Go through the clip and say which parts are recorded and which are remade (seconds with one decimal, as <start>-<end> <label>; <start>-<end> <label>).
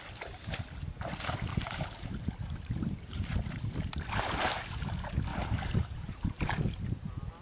0.0-1.5 recorded; 1.5-3.6 remade; 3.6-5.3 recorded; 5.3-6.6 remade; 6.6-7.4 recorded